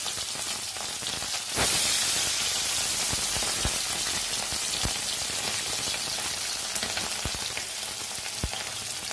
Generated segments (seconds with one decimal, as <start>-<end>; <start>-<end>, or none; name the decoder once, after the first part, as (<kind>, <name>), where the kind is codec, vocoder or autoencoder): none